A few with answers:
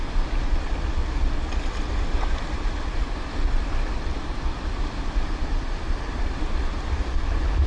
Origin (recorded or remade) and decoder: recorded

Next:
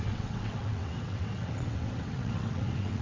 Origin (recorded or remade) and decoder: remade, vocoder, WaveNeXt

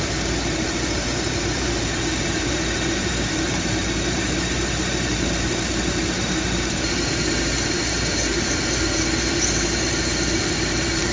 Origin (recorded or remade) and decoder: remade, vocoder, BigVGAN v2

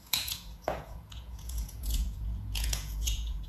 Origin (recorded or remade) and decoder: remade, vocoder, Vocos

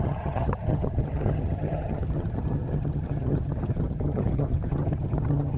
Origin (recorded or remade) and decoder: remade, vocoder, HiFi-GAN